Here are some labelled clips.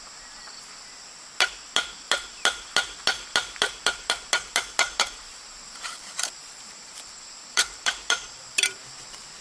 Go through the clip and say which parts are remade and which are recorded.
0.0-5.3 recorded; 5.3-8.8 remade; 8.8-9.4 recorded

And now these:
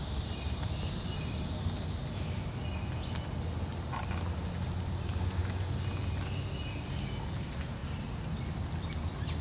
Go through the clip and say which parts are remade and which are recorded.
0.0-7.8 recorded; 7.8-8.4 remade; 8.4-9.4 recorded

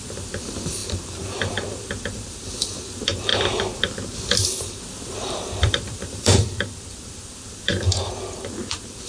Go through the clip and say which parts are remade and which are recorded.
0.0-3.3 remade; 3.3-4.6 recorded; 4.6-9.1 remade